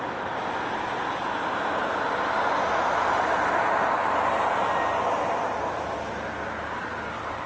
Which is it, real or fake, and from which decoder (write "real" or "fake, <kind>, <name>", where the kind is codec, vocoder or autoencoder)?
real